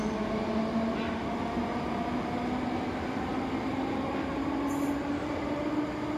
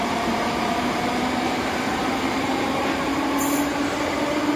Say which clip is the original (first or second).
first